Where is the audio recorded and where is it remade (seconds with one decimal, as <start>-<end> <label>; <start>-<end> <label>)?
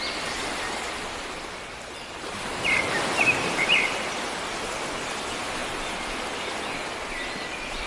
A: 0.0-7.9 recorded